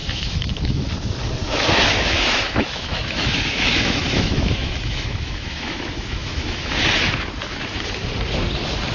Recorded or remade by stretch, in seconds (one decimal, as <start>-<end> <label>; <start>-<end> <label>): 0.0-0.8 remade; 0.8-1.4 recorded; 1.4-6.7 remade; 6.7-8.9 recorded